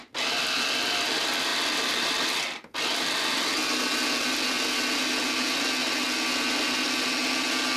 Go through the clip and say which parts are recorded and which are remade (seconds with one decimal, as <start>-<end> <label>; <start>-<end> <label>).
0.0-7.8 recorded